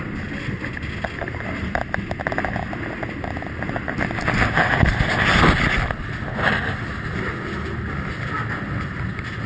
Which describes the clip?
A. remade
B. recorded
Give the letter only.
B